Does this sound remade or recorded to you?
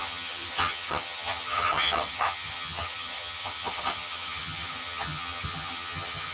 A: remade